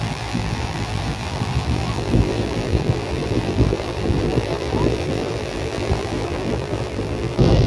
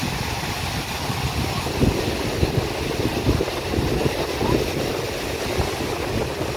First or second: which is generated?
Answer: first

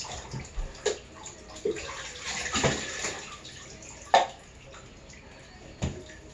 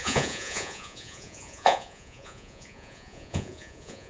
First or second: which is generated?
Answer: second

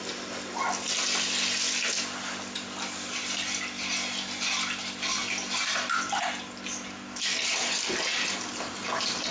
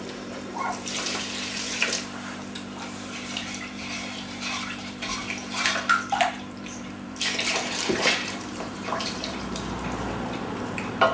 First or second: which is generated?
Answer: second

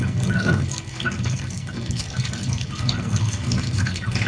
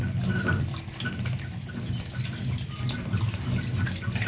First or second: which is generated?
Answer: first